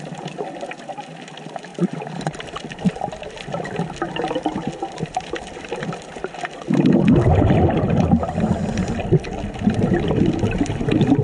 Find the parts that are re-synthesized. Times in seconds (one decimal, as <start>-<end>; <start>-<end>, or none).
1.7-6.0